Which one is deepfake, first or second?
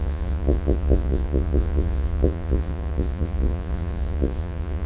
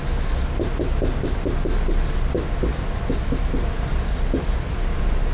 first